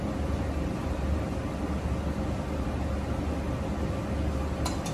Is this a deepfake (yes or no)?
no